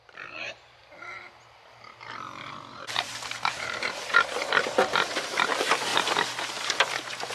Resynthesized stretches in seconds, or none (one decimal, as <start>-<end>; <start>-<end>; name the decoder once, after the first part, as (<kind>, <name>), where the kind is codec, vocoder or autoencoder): 0.0-0.8 (vocoder, BigVGAN v2); 2.7-5.9